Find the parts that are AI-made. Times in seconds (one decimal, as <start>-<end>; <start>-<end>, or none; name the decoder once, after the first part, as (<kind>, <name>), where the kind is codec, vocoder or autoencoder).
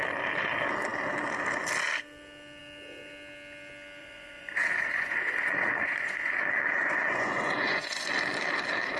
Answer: 4.0-8.1 (vocoder, Vocos)